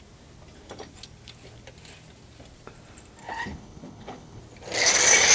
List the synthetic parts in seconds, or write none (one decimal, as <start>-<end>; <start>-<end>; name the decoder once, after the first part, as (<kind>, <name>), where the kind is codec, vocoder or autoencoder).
3.2-4.4 (codec, HILCodec)